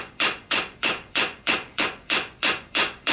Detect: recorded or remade remade